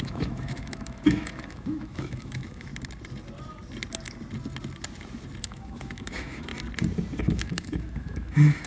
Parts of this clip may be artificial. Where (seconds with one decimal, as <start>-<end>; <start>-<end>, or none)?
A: 0.0-2.7; 5.4-6.5; 7.2-8.7